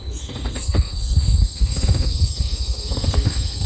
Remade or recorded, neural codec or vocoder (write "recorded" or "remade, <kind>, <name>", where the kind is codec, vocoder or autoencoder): remade, codec, SNAC